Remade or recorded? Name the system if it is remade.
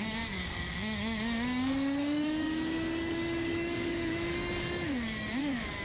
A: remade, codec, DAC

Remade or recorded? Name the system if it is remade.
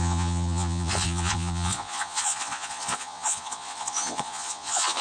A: remade, vocoder, Vocos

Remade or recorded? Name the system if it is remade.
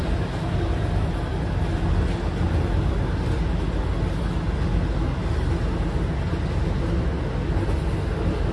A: recorded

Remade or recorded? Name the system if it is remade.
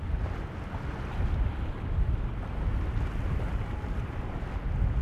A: recorded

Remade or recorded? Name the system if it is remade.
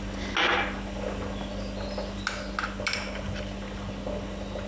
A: recorded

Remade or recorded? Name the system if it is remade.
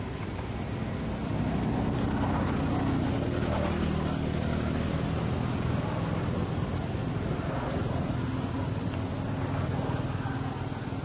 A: recorded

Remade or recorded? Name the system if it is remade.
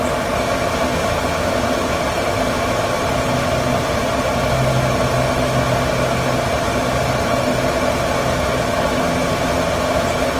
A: recorded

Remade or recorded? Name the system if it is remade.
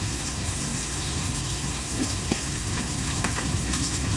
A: remade, codec, SNAC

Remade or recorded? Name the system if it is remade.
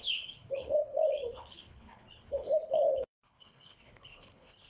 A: remade, codec, HILCodec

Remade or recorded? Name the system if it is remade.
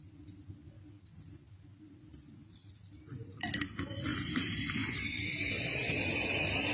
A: recorded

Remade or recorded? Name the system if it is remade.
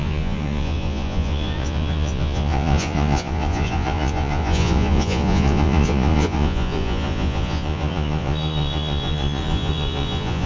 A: remade, vocoder, Vocos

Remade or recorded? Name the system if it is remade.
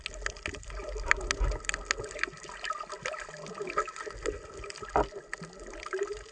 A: recorded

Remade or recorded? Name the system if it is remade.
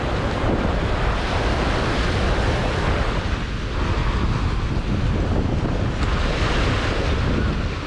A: recorded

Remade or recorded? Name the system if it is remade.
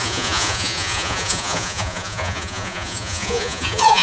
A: remade, vocoder, Vocos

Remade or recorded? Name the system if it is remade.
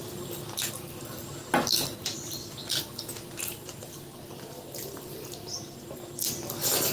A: recorded